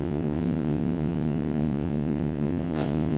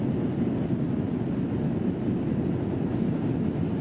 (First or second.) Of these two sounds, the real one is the second